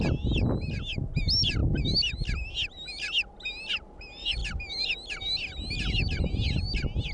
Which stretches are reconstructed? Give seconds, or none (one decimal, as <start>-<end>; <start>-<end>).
none

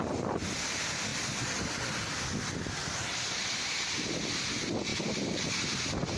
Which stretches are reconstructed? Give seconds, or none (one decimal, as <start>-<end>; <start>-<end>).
1.1-1.8; 2.8-4.3; 4.9-5.4